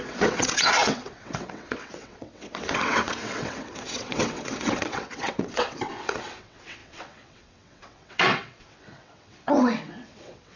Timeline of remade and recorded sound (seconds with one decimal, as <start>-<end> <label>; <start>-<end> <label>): 0.0-10.6 remade